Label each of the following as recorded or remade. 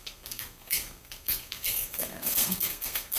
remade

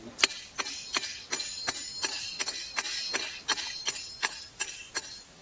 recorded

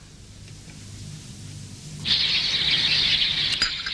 recorded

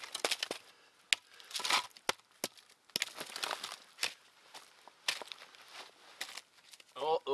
recorded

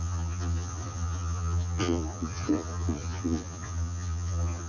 remade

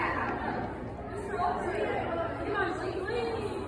recorded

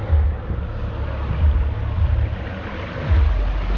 recorded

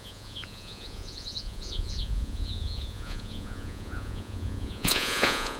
remade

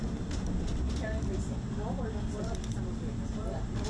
recorded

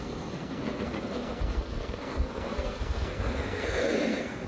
remade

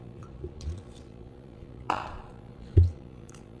remade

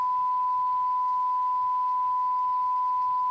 recorded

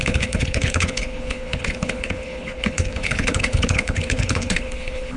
remade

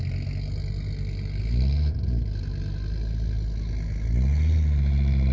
recorded